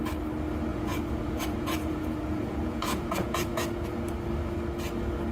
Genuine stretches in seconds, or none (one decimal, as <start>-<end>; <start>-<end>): 0.0-0.7; 3.9-5.3